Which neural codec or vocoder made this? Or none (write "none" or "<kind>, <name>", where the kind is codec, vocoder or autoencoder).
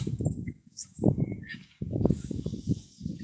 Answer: codec, DAC